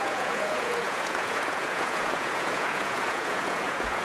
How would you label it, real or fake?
fake